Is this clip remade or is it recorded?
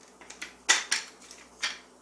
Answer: recorded